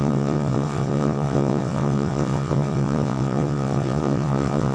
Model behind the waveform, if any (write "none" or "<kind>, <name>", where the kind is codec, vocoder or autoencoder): vocoder, WaveNeXt